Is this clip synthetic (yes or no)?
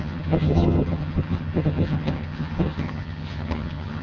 yes